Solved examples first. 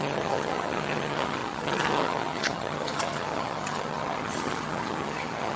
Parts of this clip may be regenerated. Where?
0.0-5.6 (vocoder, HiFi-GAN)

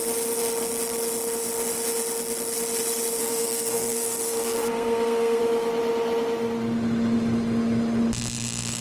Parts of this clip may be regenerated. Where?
3.2-5.4 (codec, SNAC)

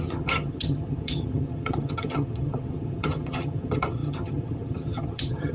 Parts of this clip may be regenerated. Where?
0.0-5.5 (vocoder, HiFi-GAN)

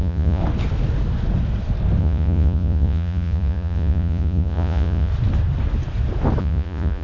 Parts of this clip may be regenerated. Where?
0.0-0.4 (vocoder, Vocos); 2.0-5.1; 6.4-7.0